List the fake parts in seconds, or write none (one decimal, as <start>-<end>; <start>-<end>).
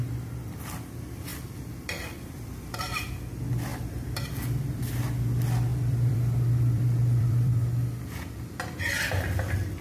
1.3-3.1; 3.7-4.8; 5.7-7.5